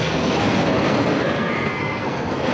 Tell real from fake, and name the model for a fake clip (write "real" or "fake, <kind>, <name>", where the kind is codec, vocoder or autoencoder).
fake, codec, SNAC